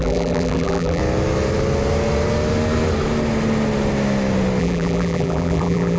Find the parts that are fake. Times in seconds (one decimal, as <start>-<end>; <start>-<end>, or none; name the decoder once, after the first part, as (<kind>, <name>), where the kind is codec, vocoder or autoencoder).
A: 0.0-1.0 (vocoder, BigVGAN v2); 4.6-6.0